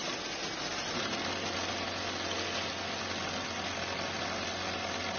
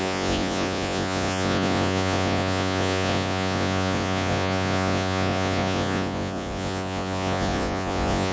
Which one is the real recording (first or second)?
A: first